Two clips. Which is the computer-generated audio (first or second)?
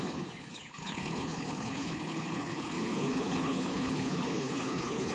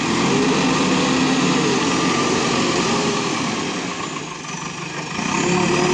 first